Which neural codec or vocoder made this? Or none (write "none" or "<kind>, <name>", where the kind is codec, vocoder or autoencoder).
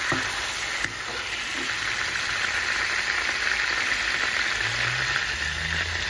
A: none